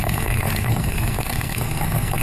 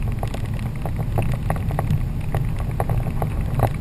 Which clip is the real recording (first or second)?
second